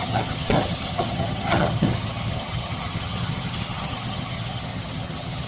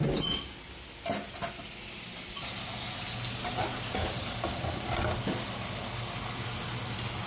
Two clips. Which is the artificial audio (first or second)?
first